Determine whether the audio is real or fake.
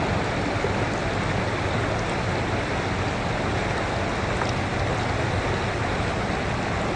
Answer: real